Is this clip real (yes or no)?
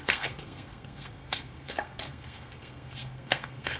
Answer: no